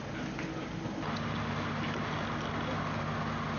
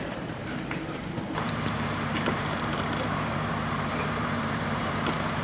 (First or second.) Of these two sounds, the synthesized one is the second